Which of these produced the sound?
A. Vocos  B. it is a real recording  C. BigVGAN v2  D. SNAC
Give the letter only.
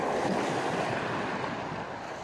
B